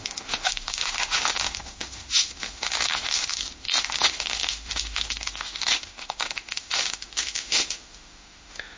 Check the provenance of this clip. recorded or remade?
remade